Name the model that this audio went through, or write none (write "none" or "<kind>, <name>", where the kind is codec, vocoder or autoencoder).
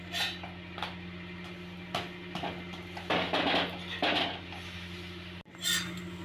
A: none